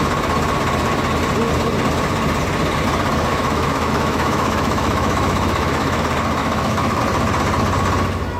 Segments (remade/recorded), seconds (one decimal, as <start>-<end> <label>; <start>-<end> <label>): 0.0-3.3 recorded; 3.3-6.0 remade; 6.0-6.4 recorded; 6.4-7.0 remade; 7.0-8.4 recorded